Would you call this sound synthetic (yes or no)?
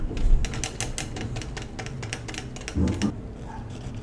no